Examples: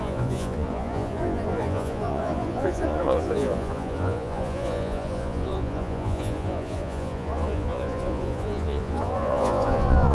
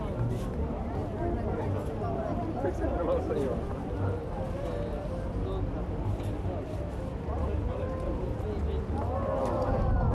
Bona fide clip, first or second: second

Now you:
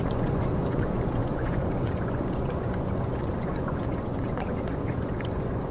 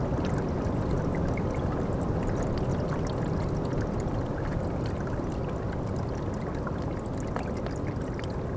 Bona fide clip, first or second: second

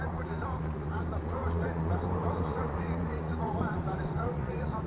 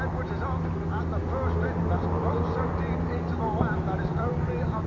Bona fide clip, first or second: second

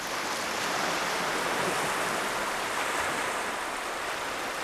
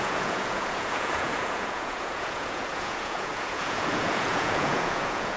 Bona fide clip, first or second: first